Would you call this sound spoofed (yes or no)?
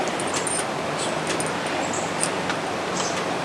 no